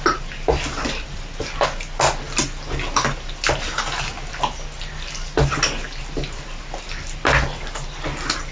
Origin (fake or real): real